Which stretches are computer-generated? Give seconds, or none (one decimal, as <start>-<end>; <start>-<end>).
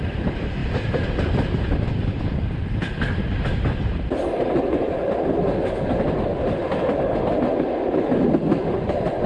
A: none